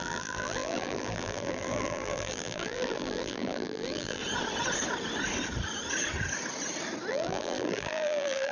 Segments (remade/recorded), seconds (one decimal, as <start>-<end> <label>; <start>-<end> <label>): 0.0-4.2 remade; 4.2-7.1 recorded; 7.1-8.5 remade

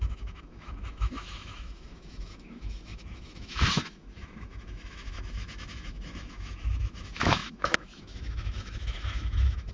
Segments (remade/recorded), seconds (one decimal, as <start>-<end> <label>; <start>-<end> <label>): 0.0-9.7 remade

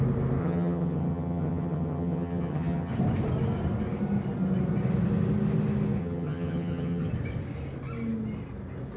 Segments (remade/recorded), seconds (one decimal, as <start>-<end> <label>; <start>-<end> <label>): 0.0-0.4 recorded; 0.4-2.9 remade; 2.9-6.0 recorded; 6.0-7.1 remade; 7.1-9.0 recorded

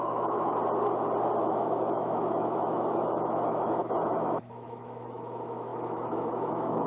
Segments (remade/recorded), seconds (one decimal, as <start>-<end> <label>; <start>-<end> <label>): 0.0-0.6 remade; 0.6-1.4 recorded; 1.4-6.9 remade

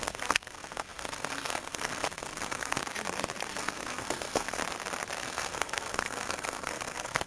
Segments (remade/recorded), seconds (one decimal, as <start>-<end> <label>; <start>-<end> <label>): 0.0-2.8 remade; 2.8-3.5 recorded; 3.5-4.6 remade; 4.6-5.2 recorded; 5.2-7.3 remade

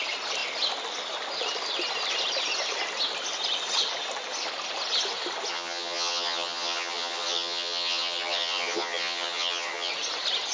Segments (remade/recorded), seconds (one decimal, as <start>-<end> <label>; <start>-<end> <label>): 0.0-5.5 recorded; 5.5-9.9 remade; 9.9-10.5 recorded